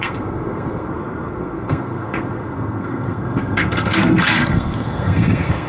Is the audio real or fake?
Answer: fake